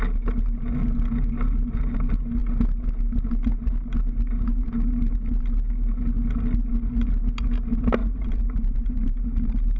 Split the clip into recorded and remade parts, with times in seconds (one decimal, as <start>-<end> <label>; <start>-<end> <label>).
0.0-8.0 recorded; 8.0-9.8 remade